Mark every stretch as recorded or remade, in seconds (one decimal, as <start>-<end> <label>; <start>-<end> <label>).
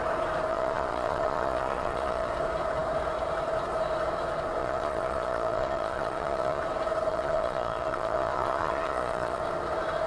0.0-0.5 recorded; 0.5-2.3 remade; 2.3-4.6 recorded; 4.6-6.6 remade; 6.6-7.1 recorded; 7.1-9.4 remade; 9.4-10.1 recorded